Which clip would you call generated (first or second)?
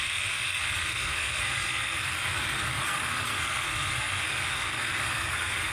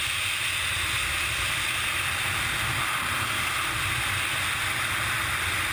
first